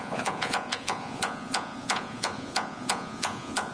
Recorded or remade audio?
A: remade